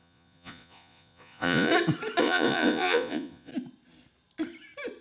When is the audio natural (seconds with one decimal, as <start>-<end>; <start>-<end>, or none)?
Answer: 1.7-2.2; 3.5-5.0